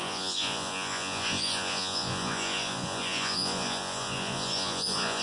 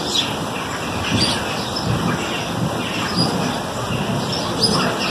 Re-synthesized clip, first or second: first